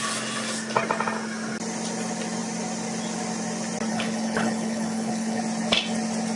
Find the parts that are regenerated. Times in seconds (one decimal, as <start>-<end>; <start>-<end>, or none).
3.9-5.4